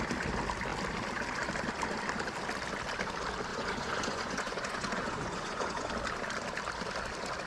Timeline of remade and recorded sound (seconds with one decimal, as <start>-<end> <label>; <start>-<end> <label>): 0.0-3.5 recorded; 3.5-5.9 remade; 5.9-7.5 recorded